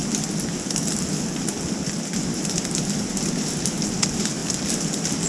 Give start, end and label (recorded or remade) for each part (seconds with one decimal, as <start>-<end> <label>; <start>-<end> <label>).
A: 0.0-5.3 recorded